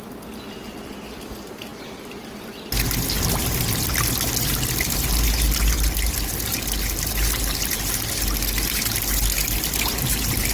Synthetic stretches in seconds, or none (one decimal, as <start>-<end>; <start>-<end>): none